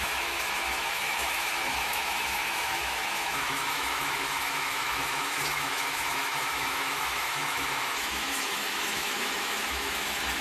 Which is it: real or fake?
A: fake